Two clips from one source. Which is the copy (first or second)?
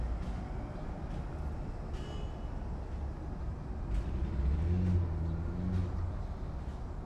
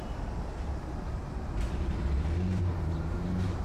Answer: second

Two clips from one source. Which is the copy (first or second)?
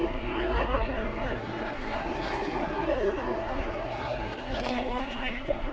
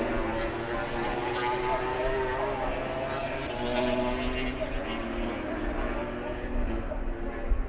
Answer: first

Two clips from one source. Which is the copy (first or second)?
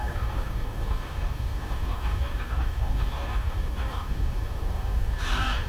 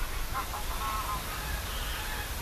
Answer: first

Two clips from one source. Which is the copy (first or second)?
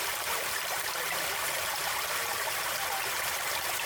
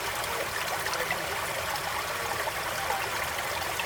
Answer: first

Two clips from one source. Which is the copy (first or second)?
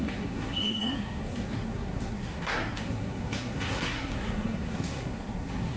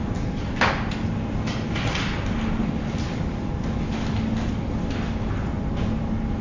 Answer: first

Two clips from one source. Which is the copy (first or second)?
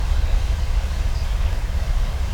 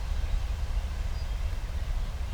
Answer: first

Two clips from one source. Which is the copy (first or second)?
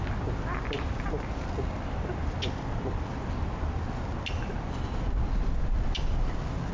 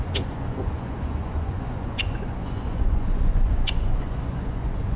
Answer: second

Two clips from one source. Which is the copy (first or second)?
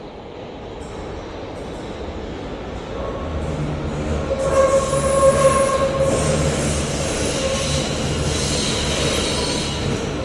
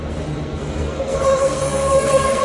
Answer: second